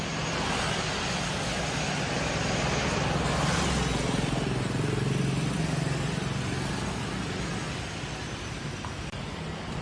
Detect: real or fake real